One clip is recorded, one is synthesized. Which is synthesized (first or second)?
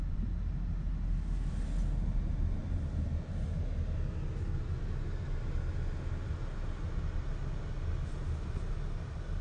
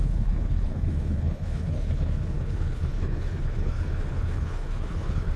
second